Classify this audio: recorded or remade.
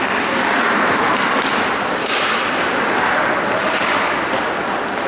recorded